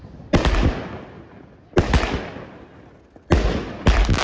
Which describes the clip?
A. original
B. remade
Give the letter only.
A